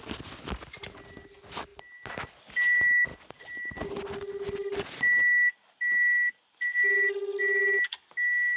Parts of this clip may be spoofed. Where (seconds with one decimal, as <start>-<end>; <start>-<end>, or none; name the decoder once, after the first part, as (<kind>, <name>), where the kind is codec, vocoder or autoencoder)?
none